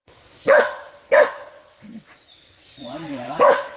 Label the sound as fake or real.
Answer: fake